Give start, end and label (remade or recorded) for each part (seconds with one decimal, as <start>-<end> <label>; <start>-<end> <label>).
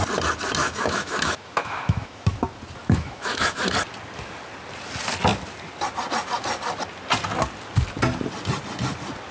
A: 0.0-0.6 recorded; 0.6-2.3 remade; 2.3-2.8 recorded; 2.8-3.6 remade; 3.6-9.3 recorded